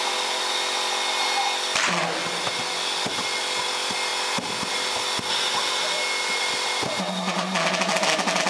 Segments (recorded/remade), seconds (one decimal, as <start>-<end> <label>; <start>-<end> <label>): 0.0-8.5 recorded